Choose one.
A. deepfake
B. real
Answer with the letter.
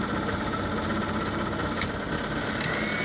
B